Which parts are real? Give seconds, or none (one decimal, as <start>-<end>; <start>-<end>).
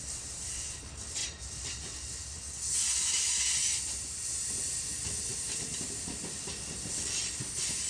0.0-7.9